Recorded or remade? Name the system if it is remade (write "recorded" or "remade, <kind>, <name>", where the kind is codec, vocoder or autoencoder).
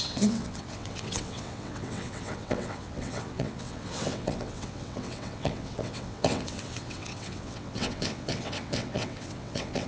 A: remade, vocoder, WaveNeXt